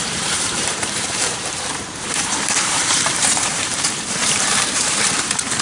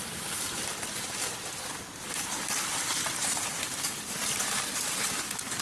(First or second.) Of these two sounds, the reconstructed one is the first